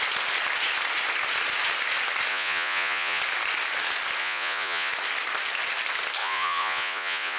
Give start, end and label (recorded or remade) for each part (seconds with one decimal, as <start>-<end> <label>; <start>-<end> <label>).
0.0-2.3 recorded; 2.3-3.2 remade; 3.2-4.2 recorded; 4.2-4.9 remade; 4.9-6.2 recorded; 6.2-7.4 remade